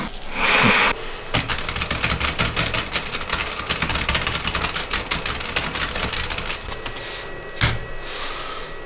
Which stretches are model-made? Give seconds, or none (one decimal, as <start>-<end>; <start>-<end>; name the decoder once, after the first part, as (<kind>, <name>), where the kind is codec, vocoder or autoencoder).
none